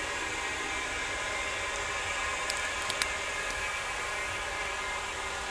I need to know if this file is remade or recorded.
recorded